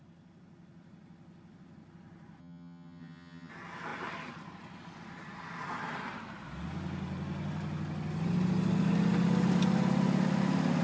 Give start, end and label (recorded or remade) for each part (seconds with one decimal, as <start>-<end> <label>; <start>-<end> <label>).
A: 0.0-2.4 recorded; 2.4-3.5 remade; 3.5-10.8 recorded